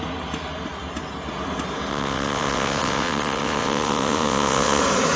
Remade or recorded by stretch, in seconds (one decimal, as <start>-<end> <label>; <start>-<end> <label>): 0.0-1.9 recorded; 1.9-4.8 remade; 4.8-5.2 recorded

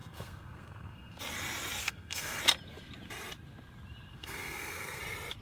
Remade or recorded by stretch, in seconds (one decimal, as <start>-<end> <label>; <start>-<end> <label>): 0.0-1.2 remade; 1.2-1.8 recorded; 1.8-2.4 remade; 2.4-4.1 recorded; 4.1-5.0 remade; 5.0-5.4 recorded

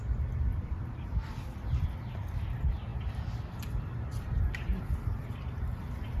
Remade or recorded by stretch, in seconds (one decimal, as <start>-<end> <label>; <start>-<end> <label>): 0.0-0.5 recorded; 0.5-2.1 remade; 2.1-2.9 recorded; 2.9-4.0 remade; 4.0-6.2 recorded

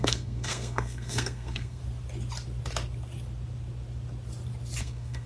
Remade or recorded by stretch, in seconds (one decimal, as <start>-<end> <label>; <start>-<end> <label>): 0.0-1.8 remade; 1.8-4.8 recorded; 4.8-5.3 remade